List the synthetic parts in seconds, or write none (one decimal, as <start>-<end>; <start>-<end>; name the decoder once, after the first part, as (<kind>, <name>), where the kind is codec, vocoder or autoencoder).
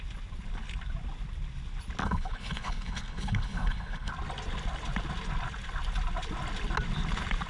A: 2.0-4.1 (codec, HILCodec)